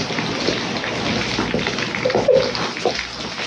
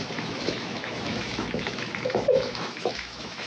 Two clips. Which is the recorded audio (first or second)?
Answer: first